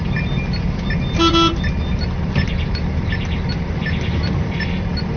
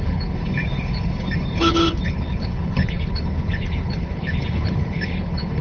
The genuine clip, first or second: first